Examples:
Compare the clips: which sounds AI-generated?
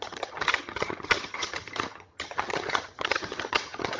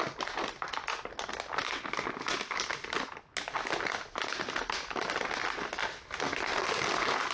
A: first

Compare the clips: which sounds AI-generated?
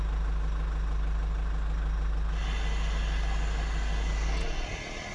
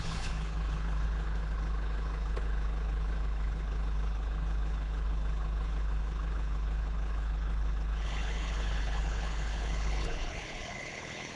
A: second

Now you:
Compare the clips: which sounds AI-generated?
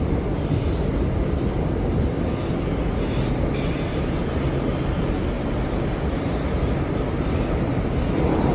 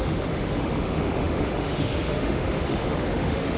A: second